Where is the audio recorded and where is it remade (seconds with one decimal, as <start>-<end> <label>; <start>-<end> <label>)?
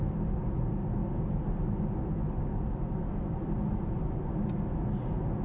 0.0-5.4 recorded